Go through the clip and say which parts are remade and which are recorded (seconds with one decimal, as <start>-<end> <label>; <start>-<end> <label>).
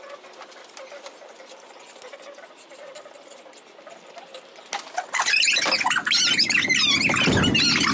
0.0-7.9 recorded